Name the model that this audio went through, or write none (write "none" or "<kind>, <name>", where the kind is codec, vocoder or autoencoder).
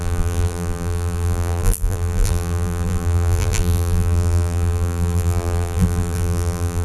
vocoder, BigVGAN v2